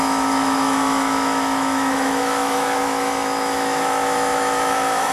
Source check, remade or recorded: remade